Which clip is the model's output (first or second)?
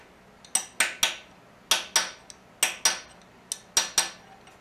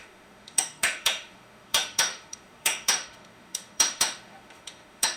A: second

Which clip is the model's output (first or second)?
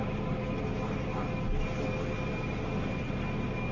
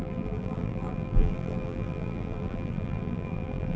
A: second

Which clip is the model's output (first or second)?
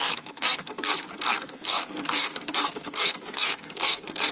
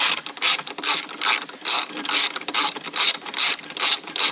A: first